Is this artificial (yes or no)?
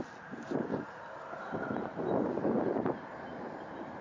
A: yes